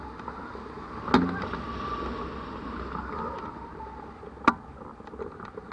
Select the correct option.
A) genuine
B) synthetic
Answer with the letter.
A